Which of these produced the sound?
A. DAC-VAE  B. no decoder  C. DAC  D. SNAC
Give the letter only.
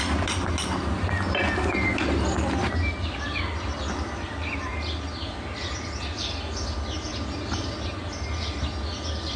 B